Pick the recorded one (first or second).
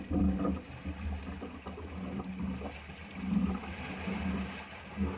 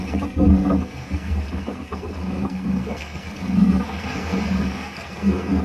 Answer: first